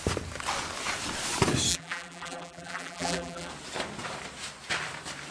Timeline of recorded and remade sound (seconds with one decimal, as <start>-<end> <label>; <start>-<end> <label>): 0.0-1.7 recorded; 1.7-3.5 remade; 3.5-5.3 recorded